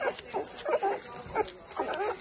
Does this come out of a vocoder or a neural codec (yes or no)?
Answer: no